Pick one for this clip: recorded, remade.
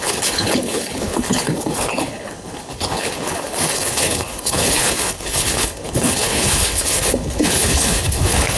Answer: remade